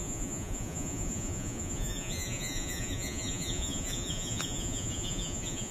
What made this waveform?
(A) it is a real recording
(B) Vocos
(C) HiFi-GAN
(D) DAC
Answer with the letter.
B